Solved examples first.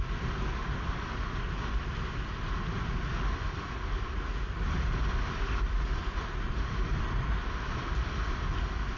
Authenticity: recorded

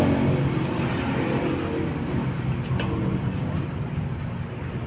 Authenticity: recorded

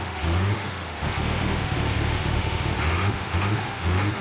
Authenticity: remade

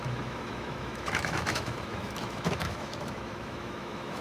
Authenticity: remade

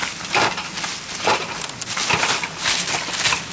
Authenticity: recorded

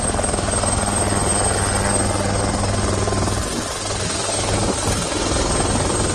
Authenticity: recorded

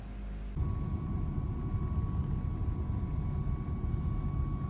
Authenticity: recorded